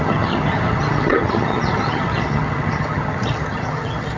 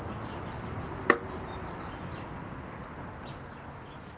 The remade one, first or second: first